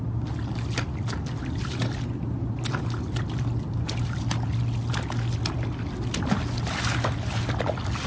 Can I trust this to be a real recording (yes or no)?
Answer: yes